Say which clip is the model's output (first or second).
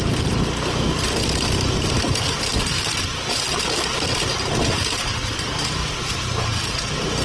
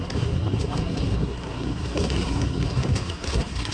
second